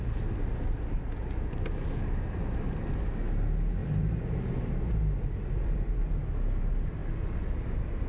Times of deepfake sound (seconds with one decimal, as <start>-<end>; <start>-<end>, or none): 3.8-4.7